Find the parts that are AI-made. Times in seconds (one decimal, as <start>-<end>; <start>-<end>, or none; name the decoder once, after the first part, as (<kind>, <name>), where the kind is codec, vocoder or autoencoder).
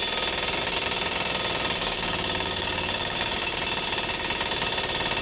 1.8-3.6 (codec, DAC)